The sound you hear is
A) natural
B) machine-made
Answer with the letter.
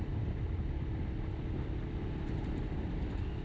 A